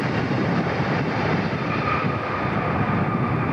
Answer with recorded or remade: recorded